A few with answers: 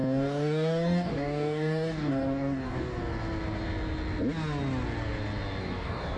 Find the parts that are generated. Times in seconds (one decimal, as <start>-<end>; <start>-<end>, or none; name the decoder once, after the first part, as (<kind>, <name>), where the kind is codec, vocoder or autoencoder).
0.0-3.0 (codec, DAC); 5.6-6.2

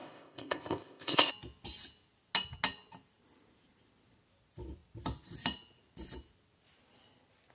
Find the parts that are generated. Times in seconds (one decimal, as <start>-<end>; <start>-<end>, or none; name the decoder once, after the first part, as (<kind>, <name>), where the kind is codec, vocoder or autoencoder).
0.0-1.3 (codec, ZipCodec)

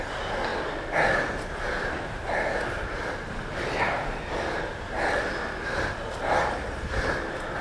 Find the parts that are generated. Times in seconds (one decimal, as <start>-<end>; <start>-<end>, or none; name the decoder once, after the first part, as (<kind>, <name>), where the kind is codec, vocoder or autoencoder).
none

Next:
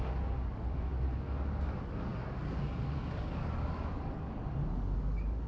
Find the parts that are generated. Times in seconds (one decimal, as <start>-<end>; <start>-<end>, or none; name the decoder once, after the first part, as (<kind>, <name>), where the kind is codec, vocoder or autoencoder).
0.0-5.5 (codec, DAC)

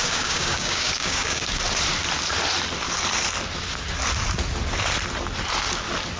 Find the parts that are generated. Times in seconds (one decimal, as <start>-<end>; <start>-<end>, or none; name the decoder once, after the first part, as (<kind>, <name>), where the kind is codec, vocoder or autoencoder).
0.0-1.6 (codec, DAC)

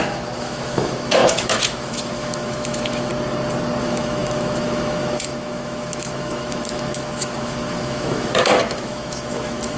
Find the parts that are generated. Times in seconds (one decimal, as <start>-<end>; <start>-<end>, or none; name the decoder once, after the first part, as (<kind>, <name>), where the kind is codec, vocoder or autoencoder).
0.0-3.1 (autoencoder, DAC-VAE); 3.8-9.8

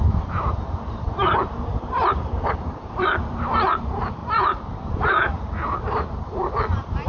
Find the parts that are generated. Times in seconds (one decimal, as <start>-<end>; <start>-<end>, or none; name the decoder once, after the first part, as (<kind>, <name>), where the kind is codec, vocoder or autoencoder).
1.2-3.8 (vocoder, BigVGAN v2); 4.2-6.2

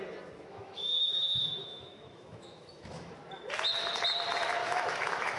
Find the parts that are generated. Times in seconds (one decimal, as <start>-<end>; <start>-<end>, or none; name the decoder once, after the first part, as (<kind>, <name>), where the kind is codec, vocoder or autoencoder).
0.5-3.1 (autoencoder, DAC-VAE); 4.6-5.4